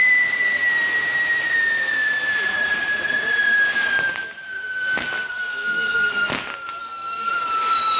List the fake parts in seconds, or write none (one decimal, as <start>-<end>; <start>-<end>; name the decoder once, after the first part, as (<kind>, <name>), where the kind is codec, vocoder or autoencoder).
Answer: 5.3-6.1 (codec, SNAC); 6.8-7.3